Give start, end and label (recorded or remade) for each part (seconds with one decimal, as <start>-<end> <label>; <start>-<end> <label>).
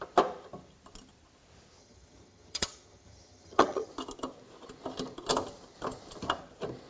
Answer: 0.0-1.8 recorded; 1.8-3.9 remade; 3.9-6.9 recorded